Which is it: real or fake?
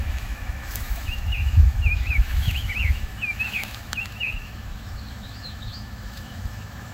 fake